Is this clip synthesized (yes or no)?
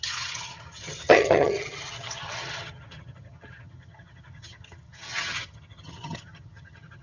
yes